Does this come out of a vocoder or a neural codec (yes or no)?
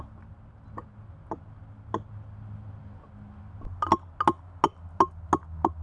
no